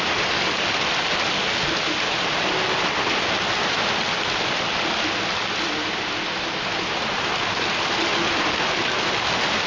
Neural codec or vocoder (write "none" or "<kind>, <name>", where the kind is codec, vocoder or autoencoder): none